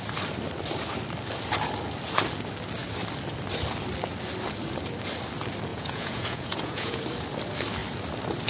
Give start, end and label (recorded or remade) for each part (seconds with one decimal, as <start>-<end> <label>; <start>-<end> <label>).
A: 0.0-5.7 recorded; 5.7-7.0 remade; 7.0-8.5 recorded